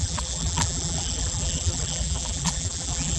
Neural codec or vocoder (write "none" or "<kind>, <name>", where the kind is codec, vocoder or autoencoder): vocoder, BigVGAN v2